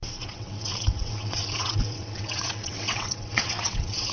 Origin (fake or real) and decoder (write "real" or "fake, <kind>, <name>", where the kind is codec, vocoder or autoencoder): fake, vocoder, WaveNeXt